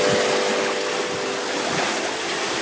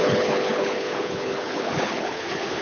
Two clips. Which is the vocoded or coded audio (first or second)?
second